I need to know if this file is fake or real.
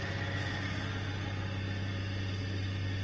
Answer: real